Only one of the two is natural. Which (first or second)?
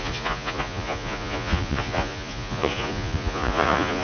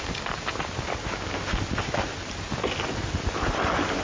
second